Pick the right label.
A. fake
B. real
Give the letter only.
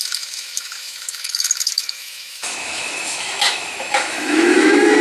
A